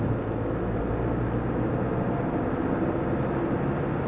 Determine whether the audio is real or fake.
real